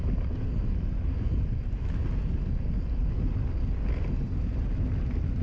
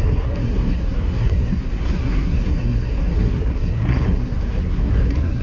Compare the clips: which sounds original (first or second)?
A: first